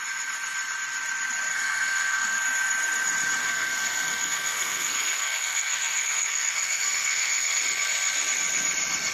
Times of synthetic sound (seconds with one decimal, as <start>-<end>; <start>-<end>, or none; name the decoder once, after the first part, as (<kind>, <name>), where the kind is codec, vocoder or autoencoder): 1.5-2.4 (codec, SNAC); 3.4-7.6